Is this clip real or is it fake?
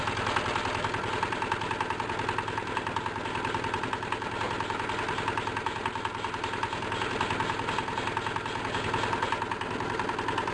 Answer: real